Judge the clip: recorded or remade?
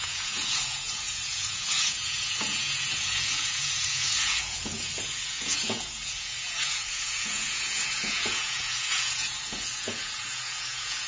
remade